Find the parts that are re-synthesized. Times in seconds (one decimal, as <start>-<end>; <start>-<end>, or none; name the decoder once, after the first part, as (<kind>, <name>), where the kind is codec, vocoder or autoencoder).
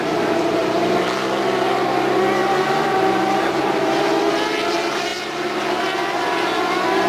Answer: 0.6-1.4 (vocoder, BigVGAN v2); 2.4-3.9; 5.1-5.8